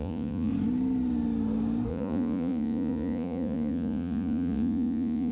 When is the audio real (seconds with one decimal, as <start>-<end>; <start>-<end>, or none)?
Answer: 0.5-1.9